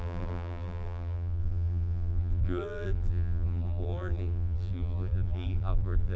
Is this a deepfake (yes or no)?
yes